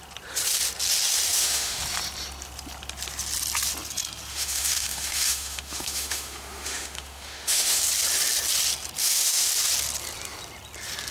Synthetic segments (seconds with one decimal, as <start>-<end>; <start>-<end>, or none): 1.3-1.8; 4.3-7.8; 9.0-9.5